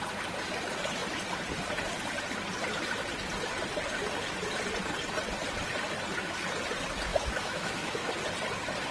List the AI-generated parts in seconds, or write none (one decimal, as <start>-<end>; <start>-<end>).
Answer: 7.1-8.1